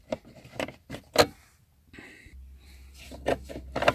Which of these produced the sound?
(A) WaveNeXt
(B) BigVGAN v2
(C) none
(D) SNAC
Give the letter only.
C